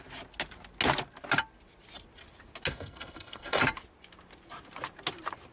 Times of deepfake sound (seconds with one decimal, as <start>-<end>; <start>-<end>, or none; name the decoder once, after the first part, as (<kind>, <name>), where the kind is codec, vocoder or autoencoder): 2.7-3.6 (codec, SNAC)